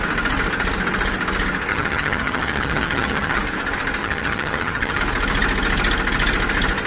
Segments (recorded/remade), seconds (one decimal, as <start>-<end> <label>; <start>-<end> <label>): 0.0-1.7 recorded; 1.7-3.4 remade; 3.4-4.0 recorded; 4.0-5.0 remade; 5.0-6.9 recorded